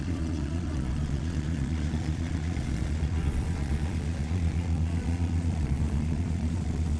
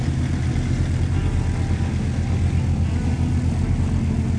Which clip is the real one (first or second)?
second